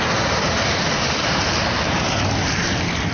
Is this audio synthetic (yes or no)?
no